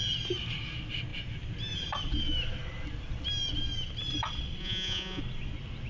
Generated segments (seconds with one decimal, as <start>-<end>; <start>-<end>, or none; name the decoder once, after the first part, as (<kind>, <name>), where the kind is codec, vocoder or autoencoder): 4.6-5.2 (vocoder, Vocos)